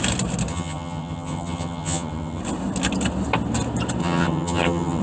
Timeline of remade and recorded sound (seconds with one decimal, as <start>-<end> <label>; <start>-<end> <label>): 0.0-0.5 recorded; 0.5-2.4 remade; 2.4-4.0 recorded; 4.0-5.0 remade